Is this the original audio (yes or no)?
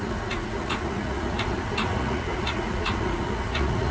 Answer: no